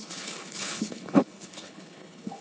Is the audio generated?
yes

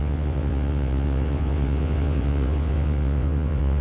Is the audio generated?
yes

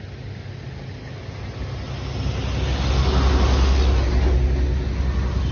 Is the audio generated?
no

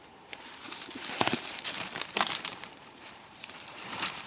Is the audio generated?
yes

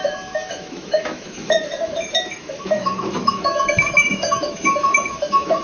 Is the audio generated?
yes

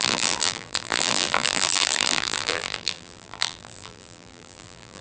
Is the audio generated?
yes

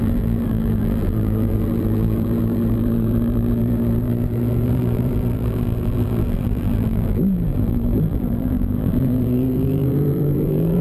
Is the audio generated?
yes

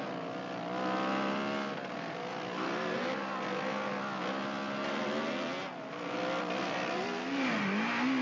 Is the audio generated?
no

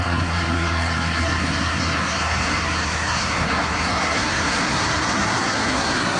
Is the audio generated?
yes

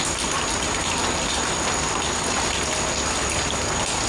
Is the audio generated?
no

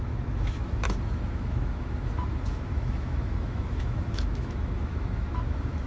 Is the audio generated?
yes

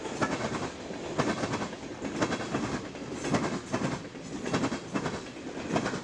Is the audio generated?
no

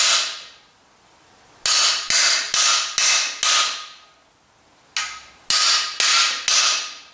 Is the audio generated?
no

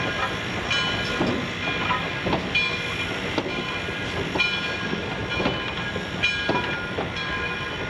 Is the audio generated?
no